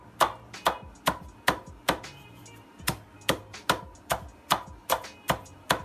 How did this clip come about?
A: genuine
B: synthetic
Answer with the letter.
A